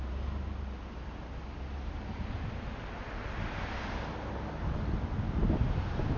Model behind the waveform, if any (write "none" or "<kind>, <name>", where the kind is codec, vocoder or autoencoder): none